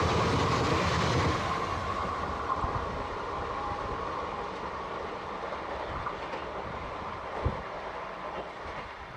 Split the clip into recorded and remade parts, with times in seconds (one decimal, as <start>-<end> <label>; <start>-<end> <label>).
0.0-1.8 recorded; 1.8-5.5 remade; 5.5-9.2 recorded